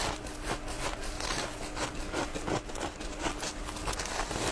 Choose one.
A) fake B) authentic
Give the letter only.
B